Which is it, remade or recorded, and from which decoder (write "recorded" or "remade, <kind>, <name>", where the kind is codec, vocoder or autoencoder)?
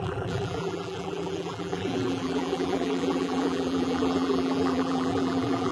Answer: remade, vocoder, BigVGAN v2